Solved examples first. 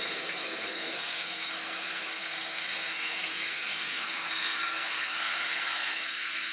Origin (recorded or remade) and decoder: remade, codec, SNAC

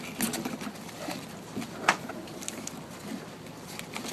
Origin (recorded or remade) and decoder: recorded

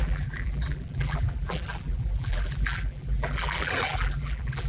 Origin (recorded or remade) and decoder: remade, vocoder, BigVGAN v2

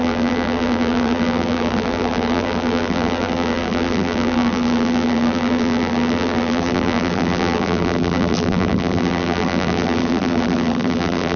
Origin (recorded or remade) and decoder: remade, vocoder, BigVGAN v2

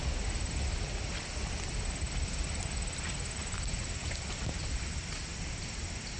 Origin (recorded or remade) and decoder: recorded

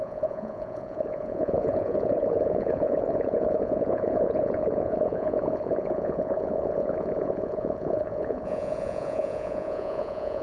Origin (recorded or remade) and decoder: remade, vocoder, Vocos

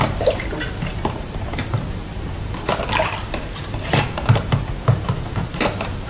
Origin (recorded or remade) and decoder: remade, vocoder, BigVGAN v2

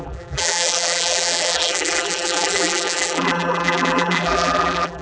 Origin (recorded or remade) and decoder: remade, vocoder, BigVGAN v2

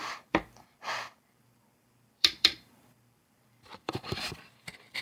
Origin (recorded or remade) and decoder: remade, vocoder, BigVGAN v2